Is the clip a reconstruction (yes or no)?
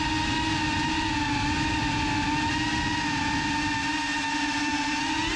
no